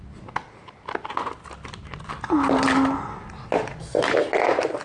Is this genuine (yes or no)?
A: yes